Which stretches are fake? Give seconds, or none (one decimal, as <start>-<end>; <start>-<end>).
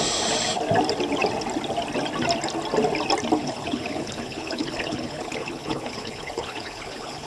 3.4-7.3